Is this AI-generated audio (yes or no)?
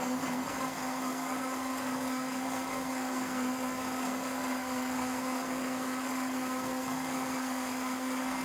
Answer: yes